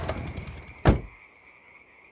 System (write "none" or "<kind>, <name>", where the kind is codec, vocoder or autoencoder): none